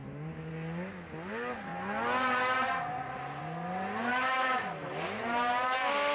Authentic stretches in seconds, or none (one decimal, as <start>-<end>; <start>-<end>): 0.0-4.1; 4.9-6.1

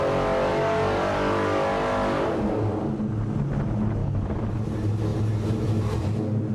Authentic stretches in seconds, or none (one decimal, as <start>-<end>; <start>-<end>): 0.0-0.5; 3.0-4.0; 4.5-6.5

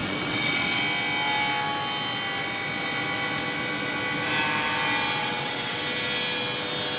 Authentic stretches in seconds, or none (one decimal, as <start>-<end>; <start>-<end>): 0.8-5.2; 5.8-7.0

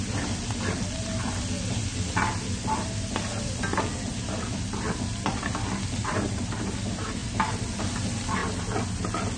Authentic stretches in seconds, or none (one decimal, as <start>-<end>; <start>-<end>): 0.0-7.2; 7.8-9.4

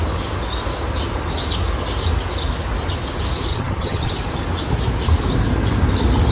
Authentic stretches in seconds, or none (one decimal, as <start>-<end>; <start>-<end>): 0.0-3.5; 4.1-6.3

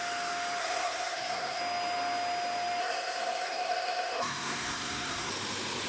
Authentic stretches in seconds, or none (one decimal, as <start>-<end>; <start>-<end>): 0.0-0.6; 1.6-2.8; 5.3-5.9